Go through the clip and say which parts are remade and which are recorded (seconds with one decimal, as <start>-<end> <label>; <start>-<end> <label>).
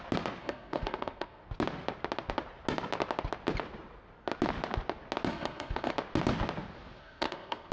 0.0-0.4 recorded; 0.4-1.4 remade; 1.4-5.3 recorded; 5.3-5.9 remade; 5.9-7.0 recorded; 7.0-7.7 remade